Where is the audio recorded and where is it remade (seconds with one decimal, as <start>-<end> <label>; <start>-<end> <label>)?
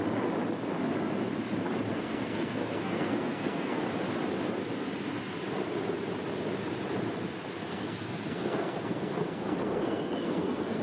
0.0-1.9 recorded; 1.9-3.8 remade; 3.8-7.7 recorded; 7.7-10.8 remade